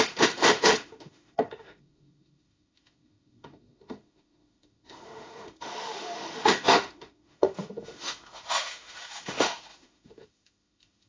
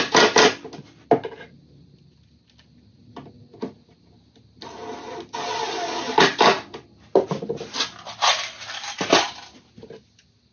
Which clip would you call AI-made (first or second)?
first